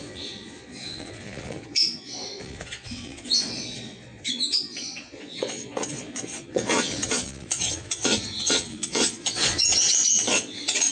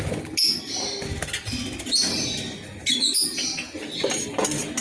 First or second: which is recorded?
second